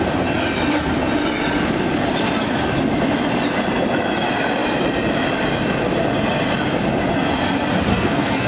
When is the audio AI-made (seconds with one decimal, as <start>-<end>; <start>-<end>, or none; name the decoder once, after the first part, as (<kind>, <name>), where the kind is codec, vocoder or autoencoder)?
7.9-8.5 (codec, SNAC)